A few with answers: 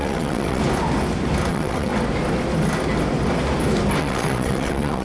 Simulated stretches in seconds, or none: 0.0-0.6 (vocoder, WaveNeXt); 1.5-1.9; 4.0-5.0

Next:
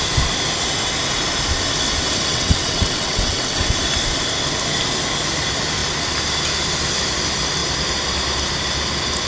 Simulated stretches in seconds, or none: 2.3-3.6 (vocoder, WaveNeXt)

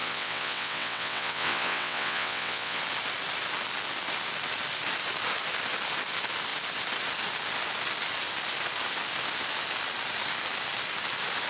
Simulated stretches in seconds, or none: 0.0-2.8 (vocoder, WaveNeXt)

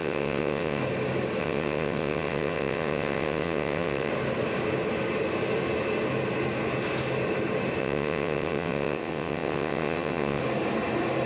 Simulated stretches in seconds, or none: 0.0-0.8 (vocoder, WaveNeXt); 1.4-4.1; 7.8-10.4